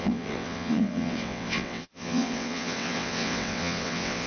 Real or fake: fake